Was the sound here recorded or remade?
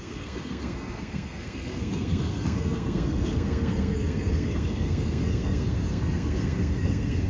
remade